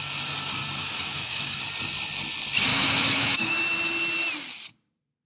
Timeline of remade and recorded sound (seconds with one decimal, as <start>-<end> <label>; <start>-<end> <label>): 0.0-0.8 recorded; 0.8-1.6 remade; 1.6-2.7 recorded; 2.7-3.5 remade; 3.5-5.3 recorded